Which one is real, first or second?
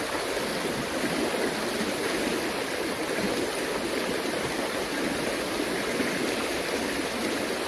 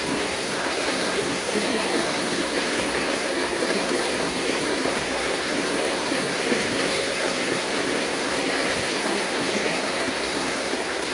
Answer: first